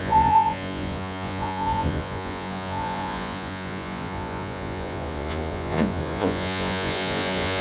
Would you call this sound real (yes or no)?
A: no